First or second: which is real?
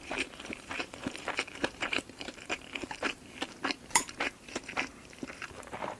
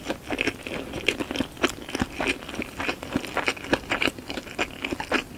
second